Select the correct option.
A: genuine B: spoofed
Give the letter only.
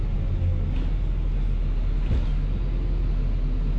A